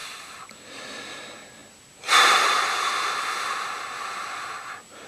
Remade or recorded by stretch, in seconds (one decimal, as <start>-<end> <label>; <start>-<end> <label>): 0.0-0.8 remade; 0.8-5.1 recorded